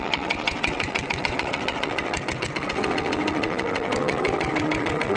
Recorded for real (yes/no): no